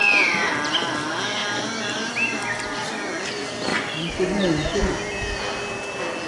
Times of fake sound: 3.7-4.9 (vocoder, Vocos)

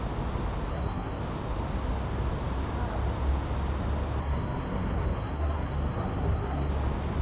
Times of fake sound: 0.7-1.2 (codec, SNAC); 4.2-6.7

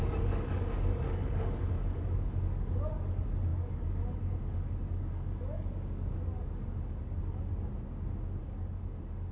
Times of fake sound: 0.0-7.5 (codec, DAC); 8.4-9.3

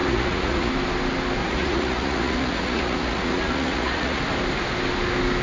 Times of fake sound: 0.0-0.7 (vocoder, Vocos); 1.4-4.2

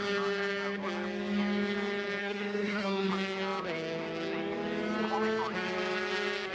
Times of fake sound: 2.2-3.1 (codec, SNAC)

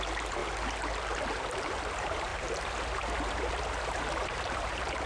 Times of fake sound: 0.0-0.4 (vocoder, BigVGAN v2); 1.3-2.3; 3.3-5.1